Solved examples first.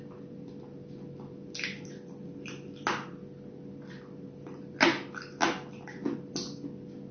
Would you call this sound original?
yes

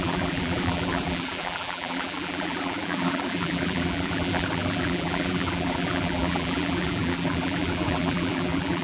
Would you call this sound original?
no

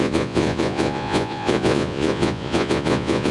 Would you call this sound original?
no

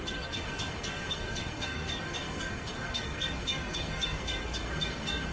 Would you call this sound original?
no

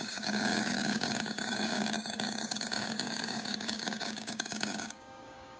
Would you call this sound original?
no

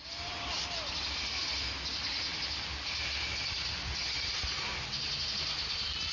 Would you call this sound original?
yes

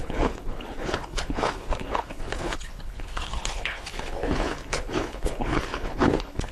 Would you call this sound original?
no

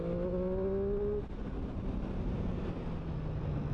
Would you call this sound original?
yes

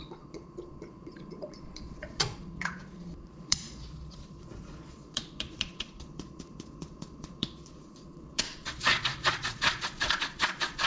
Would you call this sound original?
no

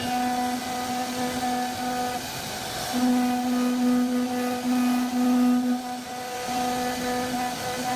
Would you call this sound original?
yes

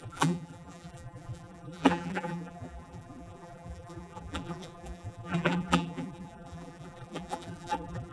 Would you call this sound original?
no